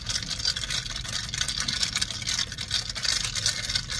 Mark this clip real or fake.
real